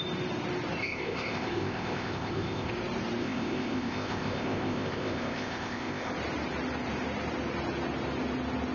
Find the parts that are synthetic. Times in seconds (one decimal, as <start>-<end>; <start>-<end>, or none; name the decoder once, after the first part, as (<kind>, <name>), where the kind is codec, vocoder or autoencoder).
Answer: 0.8-2.7 (codec, ZipCodec); 3.2-6.1